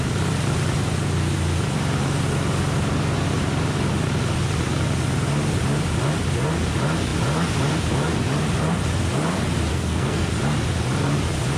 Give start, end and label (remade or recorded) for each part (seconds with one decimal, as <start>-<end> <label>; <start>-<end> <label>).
0.0-9.7 recorded; 9.7-10.3 remade; 10.3-11.6 recorded